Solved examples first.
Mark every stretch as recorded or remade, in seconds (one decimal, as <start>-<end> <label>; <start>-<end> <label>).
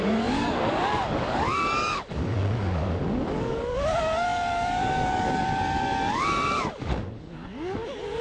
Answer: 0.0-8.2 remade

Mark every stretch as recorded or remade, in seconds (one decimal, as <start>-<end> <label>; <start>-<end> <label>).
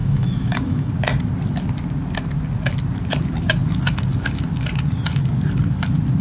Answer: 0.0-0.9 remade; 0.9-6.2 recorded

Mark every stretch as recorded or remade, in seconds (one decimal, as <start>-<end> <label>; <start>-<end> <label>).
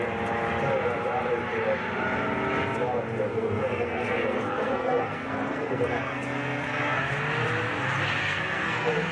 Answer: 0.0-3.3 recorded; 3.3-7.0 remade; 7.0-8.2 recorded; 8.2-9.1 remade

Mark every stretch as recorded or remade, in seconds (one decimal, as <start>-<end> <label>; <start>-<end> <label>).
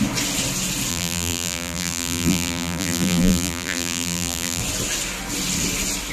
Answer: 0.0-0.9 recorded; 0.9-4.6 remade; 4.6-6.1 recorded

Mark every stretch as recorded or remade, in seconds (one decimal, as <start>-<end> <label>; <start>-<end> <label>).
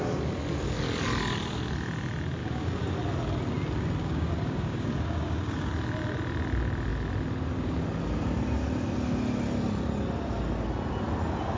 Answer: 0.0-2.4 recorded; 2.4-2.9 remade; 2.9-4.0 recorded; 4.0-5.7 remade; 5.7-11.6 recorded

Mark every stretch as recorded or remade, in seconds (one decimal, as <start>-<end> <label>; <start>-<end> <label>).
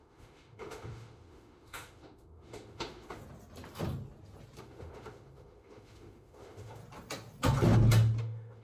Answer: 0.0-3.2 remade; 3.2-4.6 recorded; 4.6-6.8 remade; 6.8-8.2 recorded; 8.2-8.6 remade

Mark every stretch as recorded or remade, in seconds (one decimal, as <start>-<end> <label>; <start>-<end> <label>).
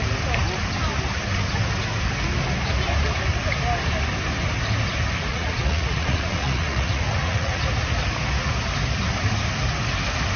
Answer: 0.0-5.3 recorded; 5.3-7.6 remade; 7.6-10.4 recorded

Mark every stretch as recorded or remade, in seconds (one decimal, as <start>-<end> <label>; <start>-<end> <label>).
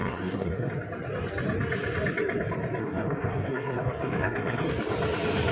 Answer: 0.0-0.7 remade; 0.7-2.8 recorded; 2.8-4.7 remade; 4.7-5.5 recorded